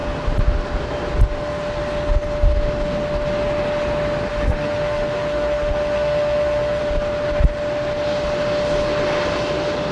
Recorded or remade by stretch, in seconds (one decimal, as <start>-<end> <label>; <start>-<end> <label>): 0.0-4.3 recorded; 4.3-6.8 remade; 6.8-9.9 recorded